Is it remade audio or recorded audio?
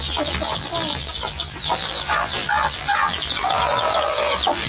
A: remade